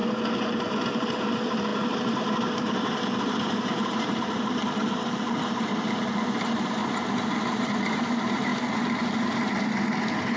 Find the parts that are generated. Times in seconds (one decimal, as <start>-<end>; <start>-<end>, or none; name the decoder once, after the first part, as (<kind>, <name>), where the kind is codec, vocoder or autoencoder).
0.0-6.8 (vocoder, BigVGAN v2); 8.1-8.5